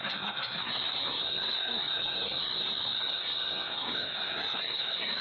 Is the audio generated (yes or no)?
yes